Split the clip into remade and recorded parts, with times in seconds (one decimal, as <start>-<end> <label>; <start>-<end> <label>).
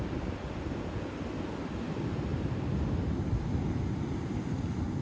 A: 0.0-5.0 recorded